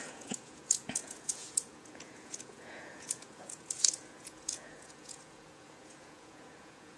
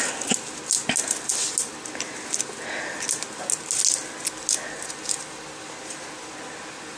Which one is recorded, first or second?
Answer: second